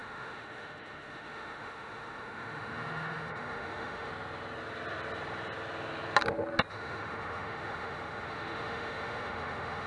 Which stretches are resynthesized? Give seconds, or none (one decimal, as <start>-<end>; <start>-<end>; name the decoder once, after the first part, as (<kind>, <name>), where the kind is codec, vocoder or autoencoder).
0.0-4.1 (autoencoder, DAC-VAE); 6.7-9.9